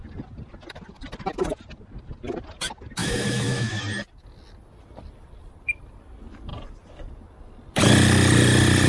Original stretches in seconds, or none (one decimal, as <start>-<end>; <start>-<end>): 0.0-3.0; 3.8-8.9